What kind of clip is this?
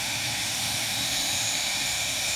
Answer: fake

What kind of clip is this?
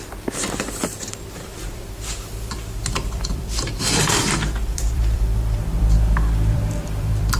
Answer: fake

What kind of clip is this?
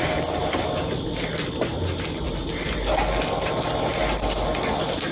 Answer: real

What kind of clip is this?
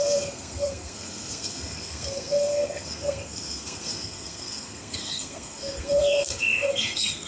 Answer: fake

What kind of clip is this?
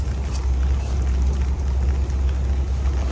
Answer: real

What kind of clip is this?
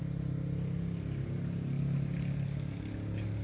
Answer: real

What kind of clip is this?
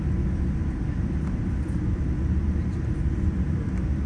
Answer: real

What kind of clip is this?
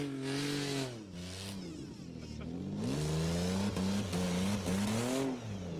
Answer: real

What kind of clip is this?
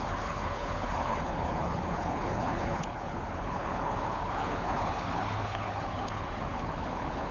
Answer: fake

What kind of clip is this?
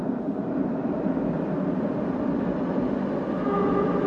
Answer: real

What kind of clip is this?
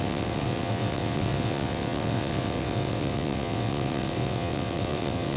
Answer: fake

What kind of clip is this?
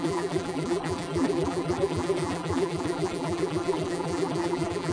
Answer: fake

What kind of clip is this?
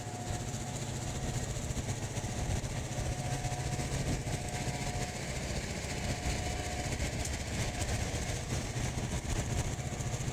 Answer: real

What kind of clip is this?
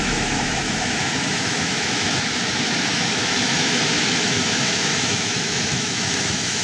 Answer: fake